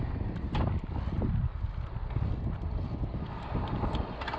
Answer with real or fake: real